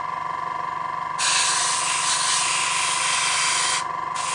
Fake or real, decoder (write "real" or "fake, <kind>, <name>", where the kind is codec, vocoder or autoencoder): real